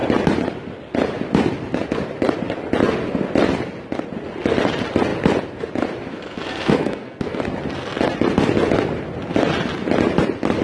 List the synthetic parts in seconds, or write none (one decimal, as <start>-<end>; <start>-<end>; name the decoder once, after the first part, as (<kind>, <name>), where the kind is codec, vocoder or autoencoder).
6.1-7.4 (codec, SNAC)